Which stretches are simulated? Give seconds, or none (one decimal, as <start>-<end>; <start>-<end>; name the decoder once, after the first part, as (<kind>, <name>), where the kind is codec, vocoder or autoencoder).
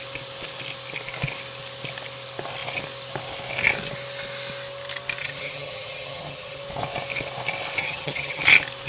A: 5.2-6.6 (vocoder, HiFi-GAN); 7.8-8.4